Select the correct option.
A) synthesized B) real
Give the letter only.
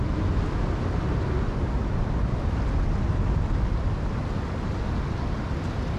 B